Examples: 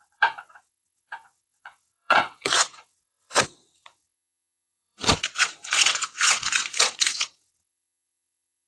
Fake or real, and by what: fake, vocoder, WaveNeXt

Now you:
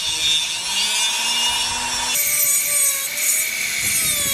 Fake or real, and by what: real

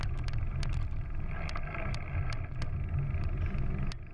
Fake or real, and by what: real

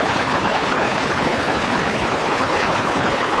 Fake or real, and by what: fake, codec, HILCodec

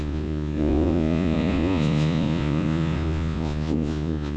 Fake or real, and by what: fake, vocoder, Vocos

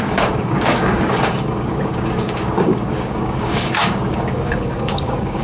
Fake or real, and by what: fake, codec, DAC